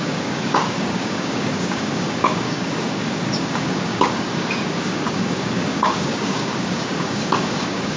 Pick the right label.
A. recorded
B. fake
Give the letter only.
B